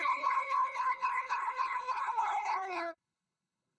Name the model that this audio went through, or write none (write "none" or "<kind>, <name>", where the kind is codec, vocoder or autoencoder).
codec, HILCodec